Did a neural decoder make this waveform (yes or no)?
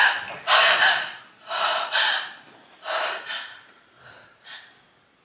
no